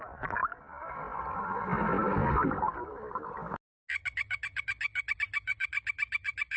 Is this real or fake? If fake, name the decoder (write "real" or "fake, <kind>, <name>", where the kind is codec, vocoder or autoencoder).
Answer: real